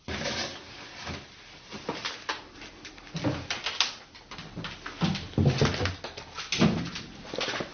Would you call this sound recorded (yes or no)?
yes